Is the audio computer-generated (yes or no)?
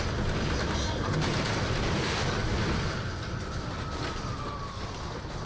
no